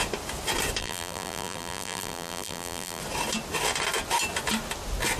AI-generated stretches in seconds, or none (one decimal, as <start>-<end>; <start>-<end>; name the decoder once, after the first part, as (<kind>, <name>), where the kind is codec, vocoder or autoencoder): 0.8-3.0 (vocoder, BigVGAN v2)